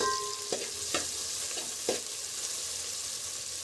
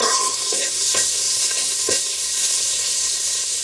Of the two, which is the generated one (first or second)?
second